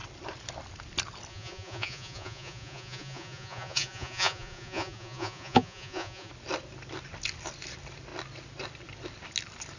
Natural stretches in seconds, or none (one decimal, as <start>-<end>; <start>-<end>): 0.0-1.3; 6.3-9.8